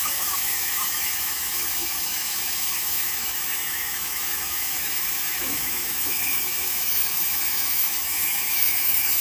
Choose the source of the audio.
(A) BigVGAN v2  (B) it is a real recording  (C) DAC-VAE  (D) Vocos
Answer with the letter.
C